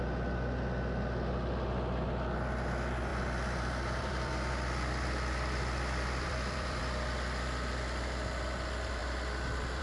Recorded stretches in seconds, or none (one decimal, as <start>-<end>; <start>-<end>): 0.0-3.1; 6.8-9.0

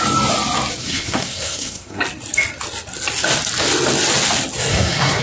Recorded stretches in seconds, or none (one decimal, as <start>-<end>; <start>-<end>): 0.0-0.8; 2.0-4.7

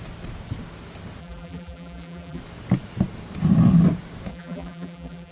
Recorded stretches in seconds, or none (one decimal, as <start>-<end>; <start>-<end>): 0.0-1.2; 2.4-4.3

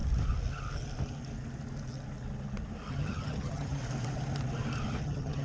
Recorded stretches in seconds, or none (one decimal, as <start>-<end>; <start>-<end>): 0.0-2.9; 3.8-5.0

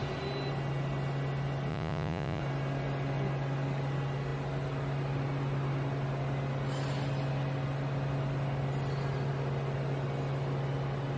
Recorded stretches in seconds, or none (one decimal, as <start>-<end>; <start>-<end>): 0.0-1.7; 2.4-11.2

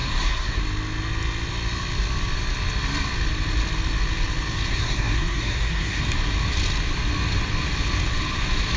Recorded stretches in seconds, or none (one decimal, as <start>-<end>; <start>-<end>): 0.6-4.7; 6.0-8.8

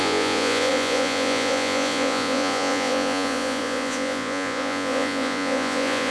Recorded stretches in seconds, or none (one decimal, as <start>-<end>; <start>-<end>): none